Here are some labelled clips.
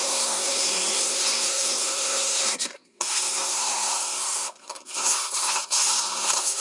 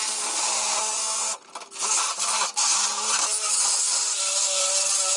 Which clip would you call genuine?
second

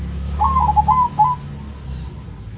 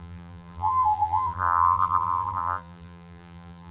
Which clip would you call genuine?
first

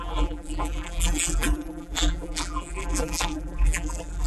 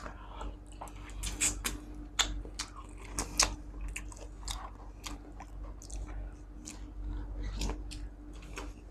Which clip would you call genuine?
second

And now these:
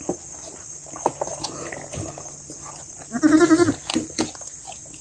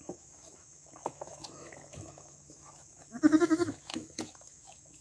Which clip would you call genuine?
first